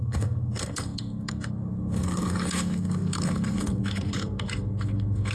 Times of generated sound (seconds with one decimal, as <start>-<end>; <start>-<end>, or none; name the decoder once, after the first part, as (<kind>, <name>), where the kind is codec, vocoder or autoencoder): 0.0-5.3 (codec, SNAC)